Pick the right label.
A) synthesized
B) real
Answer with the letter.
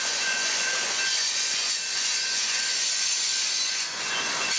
A